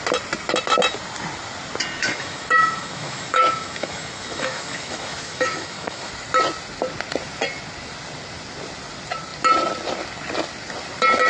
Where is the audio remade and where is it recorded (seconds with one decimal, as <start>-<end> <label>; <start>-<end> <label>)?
0.0-2.0 recorded; 2.0-6.1 remade; 6.1-11.3 recorded